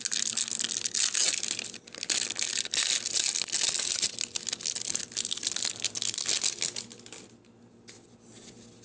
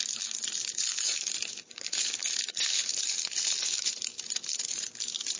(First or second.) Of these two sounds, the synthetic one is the second